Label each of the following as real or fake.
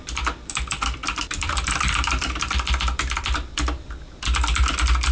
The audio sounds fake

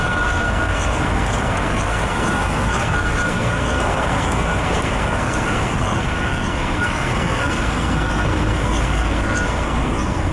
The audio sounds fake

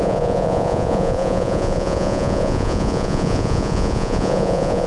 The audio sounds fake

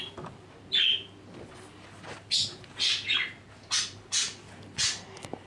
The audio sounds real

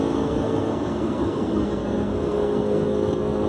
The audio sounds fake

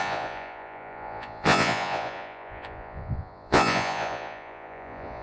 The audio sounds fake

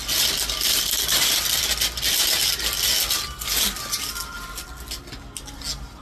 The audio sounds real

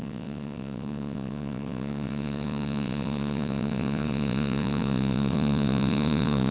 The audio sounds fake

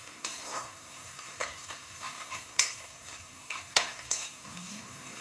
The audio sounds fake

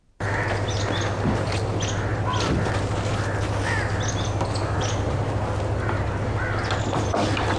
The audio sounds real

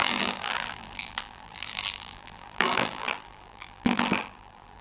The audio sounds fake